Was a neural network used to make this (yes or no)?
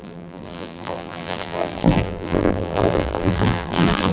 yes